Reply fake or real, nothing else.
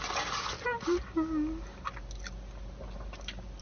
real